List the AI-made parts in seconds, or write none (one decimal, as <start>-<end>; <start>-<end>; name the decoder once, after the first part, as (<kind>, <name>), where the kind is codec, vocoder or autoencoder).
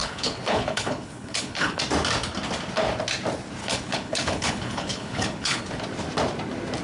0.0-1.8 (codec, HILCodec); 3.6-5.6